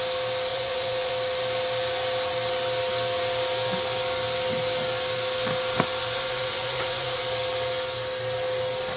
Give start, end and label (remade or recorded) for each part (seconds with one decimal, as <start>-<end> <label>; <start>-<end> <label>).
0.0-0.5 recorded; 0.5-1.1 remade; 1.1-6.0 recorded; 6.0-7.2 remade; 7.2-9.0 recorded